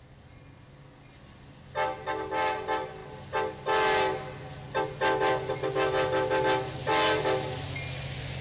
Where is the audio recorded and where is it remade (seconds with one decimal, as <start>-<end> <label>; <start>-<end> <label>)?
0.0-8.4 recorded